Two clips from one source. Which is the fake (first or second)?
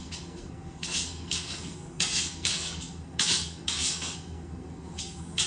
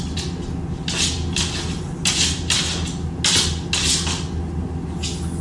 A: first